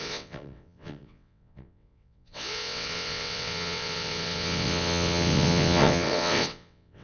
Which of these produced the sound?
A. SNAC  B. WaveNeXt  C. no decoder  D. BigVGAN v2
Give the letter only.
B